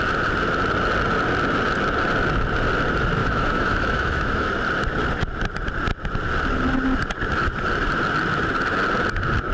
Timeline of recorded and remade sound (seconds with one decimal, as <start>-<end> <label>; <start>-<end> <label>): 0.0-3.2 recorded; 3.2-4.5 remade; 4.5-9.5 recorded